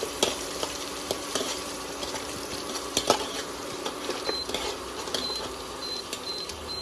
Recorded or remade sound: remade